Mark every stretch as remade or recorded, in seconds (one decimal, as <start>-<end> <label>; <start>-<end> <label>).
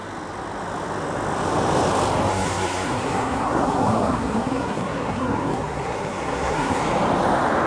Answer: 0.0-2.3 recorded; 2.3-6.8 remade; 6.8-7.7 recorded